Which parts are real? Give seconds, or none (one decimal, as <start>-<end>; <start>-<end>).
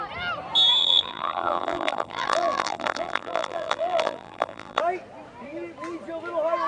0.0-0.8; 4.8-6.7